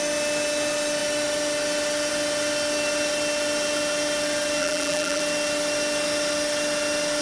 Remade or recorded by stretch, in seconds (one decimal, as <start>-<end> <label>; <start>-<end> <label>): 0.0-4.6 recorded; 4.6-5.2 remade; 5.2-7.2 recorded